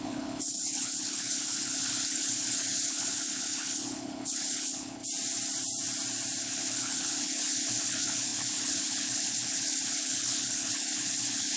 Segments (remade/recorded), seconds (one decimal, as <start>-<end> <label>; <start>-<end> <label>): 0.0-5.0 remade; 5.0-6.4 recorded; 6.4-11.6 remade